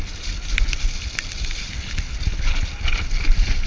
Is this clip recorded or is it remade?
recorded